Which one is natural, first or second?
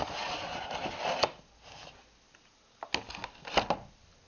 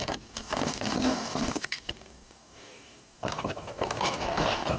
first